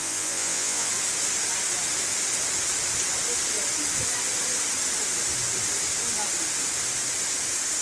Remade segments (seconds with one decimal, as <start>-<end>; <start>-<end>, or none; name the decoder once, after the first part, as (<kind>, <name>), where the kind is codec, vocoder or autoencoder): 0.0-0.9 (vocoder, Vocos)